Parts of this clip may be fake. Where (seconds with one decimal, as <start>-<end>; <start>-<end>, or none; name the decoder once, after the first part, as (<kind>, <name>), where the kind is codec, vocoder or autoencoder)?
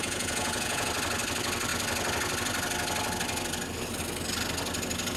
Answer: 0.0-0.9 (vocoder, Vocos)